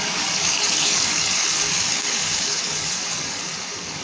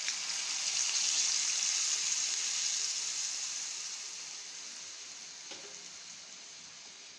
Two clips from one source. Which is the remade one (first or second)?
first